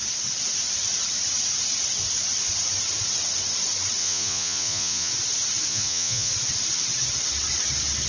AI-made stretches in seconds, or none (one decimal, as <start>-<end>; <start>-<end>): 4.0-5.1; 5.7-6.3